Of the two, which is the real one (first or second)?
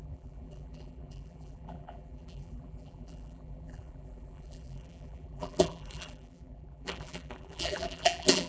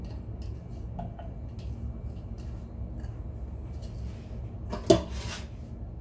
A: second